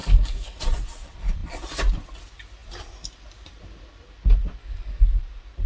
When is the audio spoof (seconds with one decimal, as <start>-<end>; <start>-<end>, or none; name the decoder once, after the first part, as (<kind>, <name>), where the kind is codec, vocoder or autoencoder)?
0.0-0.6 (codec, DAC); 4.6-5.2